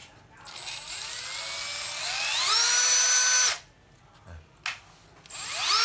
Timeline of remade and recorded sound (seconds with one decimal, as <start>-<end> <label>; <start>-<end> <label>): 0.0-5.8 recorded